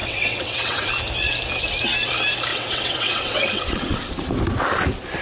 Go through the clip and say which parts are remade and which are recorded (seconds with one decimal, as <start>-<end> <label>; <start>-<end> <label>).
0.0-0.9 remade; 0.9-2.5 recorded; 2.5-4.1 remade; 4.1-5.2 recorded